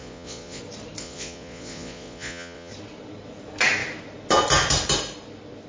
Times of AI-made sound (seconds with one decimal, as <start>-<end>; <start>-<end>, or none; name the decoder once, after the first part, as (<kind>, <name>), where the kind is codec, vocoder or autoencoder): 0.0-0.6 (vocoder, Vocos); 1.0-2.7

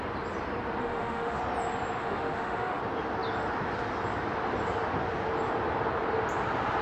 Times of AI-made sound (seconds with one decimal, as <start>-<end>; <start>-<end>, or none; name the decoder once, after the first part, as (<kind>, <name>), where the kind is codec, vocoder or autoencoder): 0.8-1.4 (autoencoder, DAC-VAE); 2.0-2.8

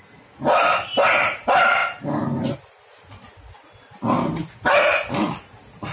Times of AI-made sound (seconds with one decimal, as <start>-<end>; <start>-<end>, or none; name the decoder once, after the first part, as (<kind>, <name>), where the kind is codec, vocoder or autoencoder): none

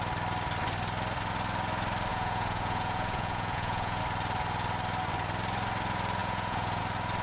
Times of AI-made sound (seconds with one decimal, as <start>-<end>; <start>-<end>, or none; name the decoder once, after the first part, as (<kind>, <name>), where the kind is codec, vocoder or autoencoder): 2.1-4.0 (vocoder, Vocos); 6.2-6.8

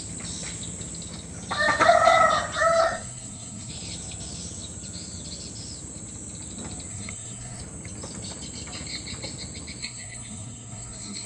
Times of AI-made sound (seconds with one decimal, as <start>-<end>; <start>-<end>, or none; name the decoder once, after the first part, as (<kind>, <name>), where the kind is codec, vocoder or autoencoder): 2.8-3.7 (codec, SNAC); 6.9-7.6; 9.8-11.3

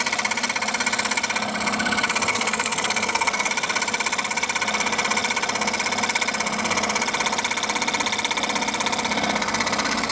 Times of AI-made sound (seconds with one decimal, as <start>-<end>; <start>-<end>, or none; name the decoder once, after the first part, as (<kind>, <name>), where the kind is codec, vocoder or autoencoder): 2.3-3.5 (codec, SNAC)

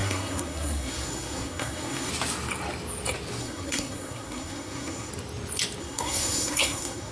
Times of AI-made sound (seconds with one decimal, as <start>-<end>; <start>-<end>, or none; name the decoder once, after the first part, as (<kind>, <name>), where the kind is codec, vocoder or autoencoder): 0.0-2.1 (codec, SNAC); 3.4-5.1; 5.8-7.1